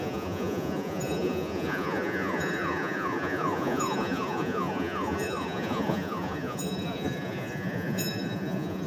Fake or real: fake